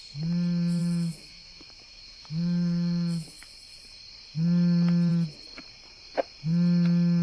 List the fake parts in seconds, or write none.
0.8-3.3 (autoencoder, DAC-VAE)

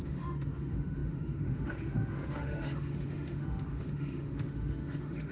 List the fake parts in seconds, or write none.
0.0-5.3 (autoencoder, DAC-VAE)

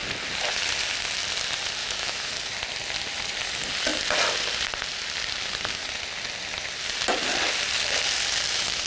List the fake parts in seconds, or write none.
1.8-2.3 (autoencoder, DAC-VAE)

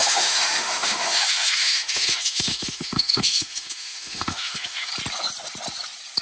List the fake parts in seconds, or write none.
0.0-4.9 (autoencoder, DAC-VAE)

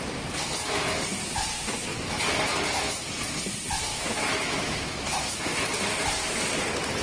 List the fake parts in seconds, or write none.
1.9-2.4 (autoencoder, DAC-VAE); 3.9-5.7

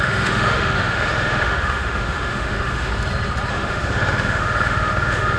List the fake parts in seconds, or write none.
0.0-2.9 (autoencoder, DAC-VAE); 3.5-5.4

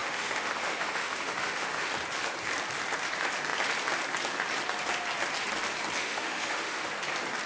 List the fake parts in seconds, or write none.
0.0-1.9 (autoencoder, DAC-VAE); 6.0-6.9